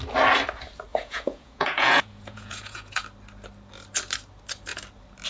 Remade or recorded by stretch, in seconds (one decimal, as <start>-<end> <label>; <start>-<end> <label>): 0.0-0.9 recorded; 0.9-3.0 remade; 3.0-5.3 recorded